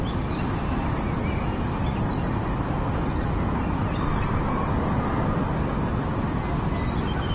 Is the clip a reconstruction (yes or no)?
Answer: no